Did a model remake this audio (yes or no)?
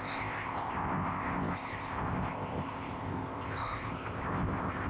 yes